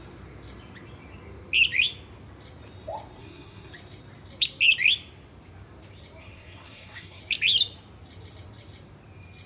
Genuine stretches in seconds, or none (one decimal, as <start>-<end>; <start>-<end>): 0.0-3.2; 3.7-6.2; 7.2-9.5